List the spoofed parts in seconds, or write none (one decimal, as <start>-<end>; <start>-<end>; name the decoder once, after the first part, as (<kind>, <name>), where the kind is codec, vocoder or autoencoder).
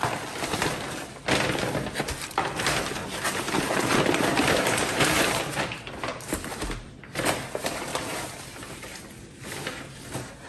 3.0-5.0 (vocoder, BigVGAN v2); 6.1-6.9